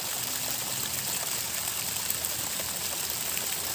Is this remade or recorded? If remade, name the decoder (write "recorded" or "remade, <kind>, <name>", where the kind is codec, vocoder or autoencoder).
recorded